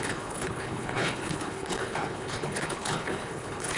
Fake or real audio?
fake